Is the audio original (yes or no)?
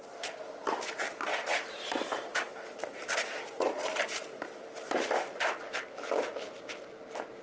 yes